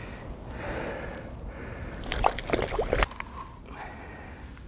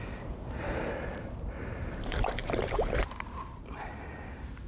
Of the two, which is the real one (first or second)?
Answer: first